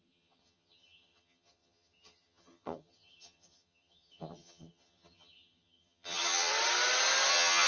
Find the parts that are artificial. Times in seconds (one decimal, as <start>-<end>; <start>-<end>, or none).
0.0-6.5; 7.3-7.7